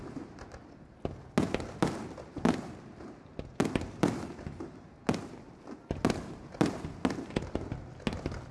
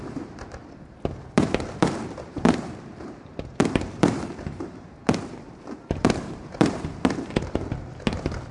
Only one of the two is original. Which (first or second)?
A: first